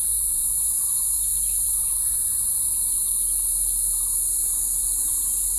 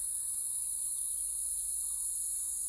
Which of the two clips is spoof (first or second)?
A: second